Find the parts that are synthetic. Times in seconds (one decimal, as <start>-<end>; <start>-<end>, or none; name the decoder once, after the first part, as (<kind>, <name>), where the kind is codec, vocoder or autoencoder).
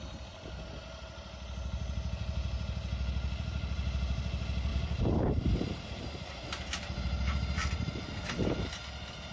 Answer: 4.7-8.8 (vocoder, BigVGAN v2)